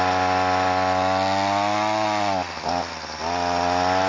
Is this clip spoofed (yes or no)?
no